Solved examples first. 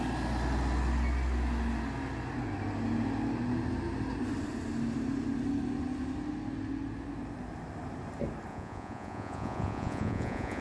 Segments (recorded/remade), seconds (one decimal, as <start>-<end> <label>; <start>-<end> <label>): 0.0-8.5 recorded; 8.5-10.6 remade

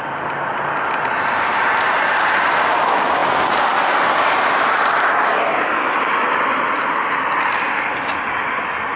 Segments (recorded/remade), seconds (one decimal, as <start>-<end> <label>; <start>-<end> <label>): 0.0-9.0 recorded

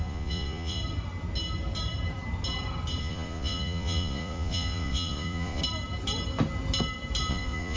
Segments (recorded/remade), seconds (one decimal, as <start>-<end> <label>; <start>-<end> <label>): 0.0-0.8 remade; 0.8-3.0 recorded; 3.0-5.6 remade; 5.6-7.3 recorded; 7.3-7.8 remade

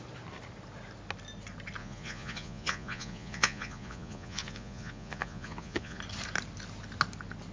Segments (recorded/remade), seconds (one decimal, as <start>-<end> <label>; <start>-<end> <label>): 0.0-1.8 recorded; 1.8-6.0 remade; 6.0-7.5 recorded

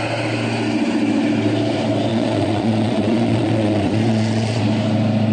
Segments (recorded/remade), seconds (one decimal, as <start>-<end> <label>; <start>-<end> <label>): 0.0-2.1 recorded; 2.1-4.6 remade; 4.6-5.3 recorded

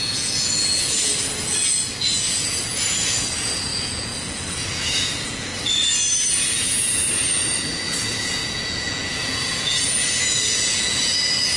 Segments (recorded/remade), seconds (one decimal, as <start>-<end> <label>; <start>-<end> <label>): 0.0-5.5 remade; 5.5-6.3 recorded; 6.3-11.6 remade

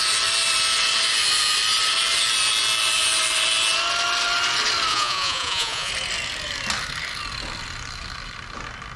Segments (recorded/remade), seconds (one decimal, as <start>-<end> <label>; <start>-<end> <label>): 0.0-4.9 recorded; 4.9-5.9 remade; 5.9-9.0 recorded